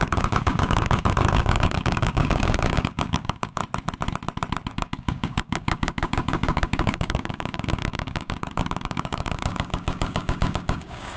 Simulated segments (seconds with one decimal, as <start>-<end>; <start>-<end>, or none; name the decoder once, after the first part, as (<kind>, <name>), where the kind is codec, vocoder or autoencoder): 0.0-3.6 (codec, DAC); 4.7-11.2